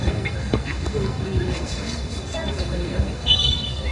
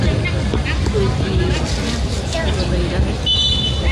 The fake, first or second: first